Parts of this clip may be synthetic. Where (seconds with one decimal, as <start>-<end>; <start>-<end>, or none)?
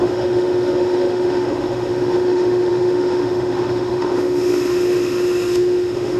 0.0-6.2